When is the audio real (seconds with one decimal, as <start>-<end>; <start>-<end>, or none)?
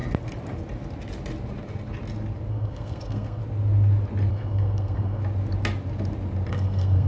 0.0-2.5; 3.4-4.3; 5.2-6.5